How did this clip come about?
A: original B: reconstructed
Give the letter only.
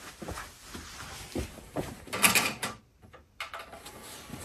A